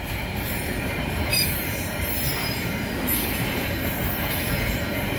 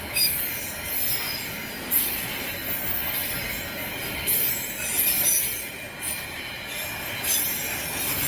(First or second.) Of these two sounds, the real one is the second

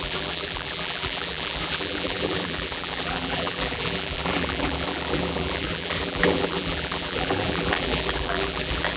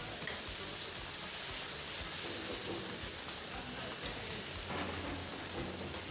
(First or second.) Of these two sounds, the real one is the second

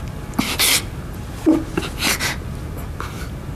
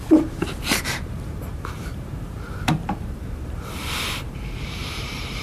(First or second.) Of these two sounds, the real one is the first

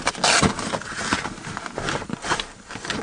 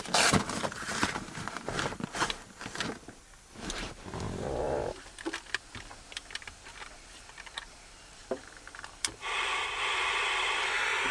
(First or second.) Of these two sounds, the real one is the first